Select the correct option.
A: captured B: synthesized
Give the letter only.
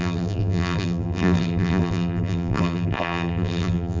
B